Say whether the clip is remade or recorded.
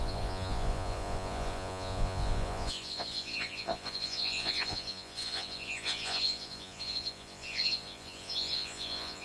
remade